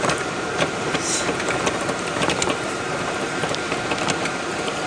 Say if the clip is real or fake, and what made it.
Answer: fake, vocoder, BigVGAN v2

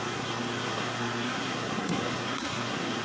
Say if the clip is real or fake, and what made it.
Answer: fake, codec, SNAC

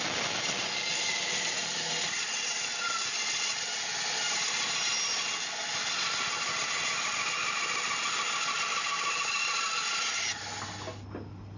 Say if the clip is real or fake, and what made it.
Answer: real